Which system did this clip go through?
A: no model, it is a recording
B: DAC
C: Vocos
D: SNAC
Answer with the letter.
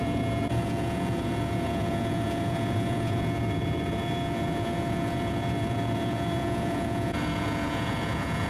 C